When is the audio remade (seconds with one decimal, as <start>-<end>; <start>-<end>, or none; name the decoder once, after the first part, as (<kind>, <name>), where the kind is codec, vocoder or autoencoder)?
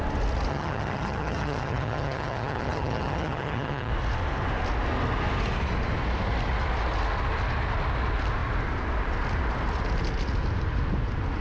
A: 0.5-3.9 (vocoder, HiFi-GAN)